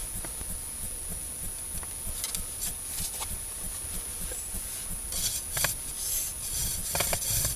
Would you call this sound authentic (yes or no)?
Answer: yes